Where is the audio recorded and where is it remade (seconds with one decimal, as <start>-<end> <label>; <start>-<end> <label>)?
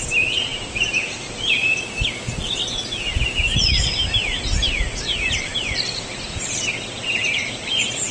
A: 0.0-8.1 recorded